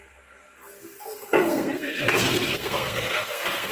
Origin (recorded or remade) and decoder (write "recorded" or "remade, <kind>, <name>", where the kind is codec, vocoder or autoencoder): remade, codec, SNAC